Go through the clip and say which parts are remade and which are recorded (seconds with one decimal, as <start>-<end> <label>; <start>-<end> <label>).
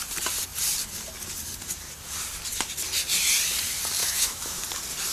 0.0-4.0 recorded; 4.0-4.6 remade; 4.6-5.1 recorded